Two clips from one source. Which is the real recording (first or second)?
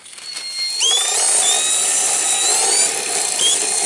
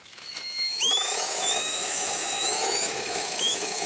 first